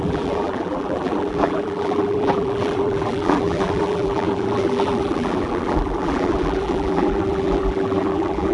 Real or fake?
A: fake